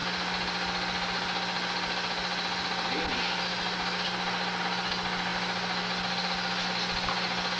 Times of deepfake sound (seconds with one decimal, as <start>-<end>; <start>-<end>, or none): none